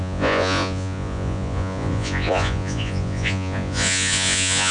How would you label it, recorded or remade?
remade